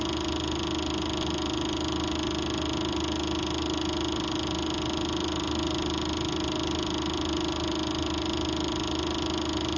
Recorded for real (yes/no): yes